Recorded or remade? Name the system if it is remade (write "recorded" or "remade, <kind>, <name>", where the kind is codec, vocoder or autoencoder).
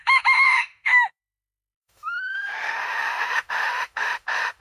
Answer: remade, autoencoder, DAC-VAE